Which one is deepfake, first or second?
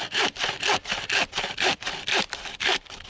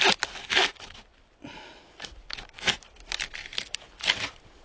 first